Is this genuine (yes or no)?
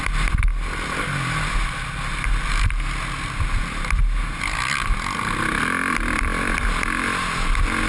yes